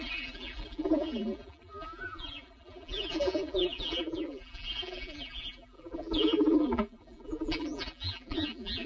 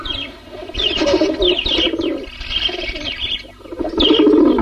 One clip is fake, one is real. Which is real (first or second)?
second